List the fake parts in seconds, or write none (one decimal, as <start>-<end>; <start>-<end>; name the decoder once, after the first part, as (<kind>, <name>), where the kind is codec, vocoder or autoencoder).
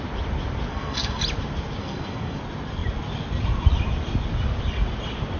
0.7-1.2 (codec, SNAC); 1.8-2.4